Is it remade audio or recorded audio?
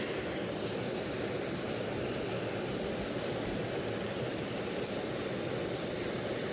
recorded